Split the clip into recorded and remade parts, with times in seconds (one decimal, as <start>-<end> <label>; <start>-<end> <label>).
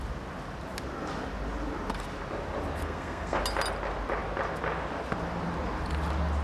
0.0-2.8 recorded; 2.8-3.4 remade; 3.4-6.4 recorded